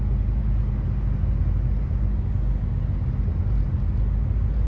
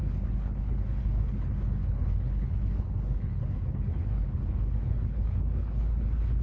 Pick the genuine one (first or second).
first